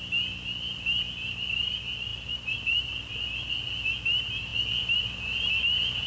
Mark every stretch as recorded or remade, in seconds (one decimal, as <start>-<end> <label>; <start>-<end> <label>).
0.0-6.1 recorded